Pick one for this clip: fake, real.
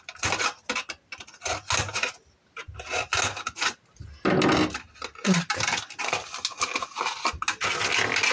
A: real